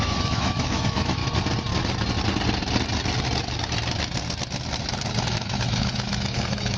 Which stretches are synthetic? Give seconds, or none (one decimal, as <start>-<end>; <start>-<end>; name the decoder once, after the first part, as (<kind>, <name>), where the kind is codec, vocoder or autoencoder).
0.0-1.2 (autoencoder, DAC-VAE); 5.3-6.8